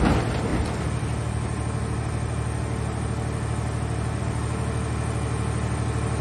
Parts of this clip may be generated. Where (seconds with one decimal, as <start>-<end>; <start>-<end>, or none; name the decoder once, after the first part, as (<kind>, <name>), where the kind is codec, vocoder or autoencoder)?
none